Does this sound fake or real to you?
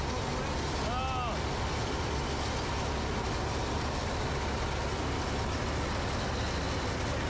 real